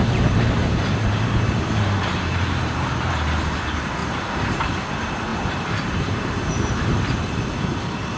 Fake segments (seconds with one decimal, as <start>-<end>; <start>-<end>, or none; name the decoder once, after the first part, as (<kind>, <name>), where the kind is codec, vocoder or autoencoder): 0.0-4.0 (vocoder, BigVGAN v2); 4.6-8.2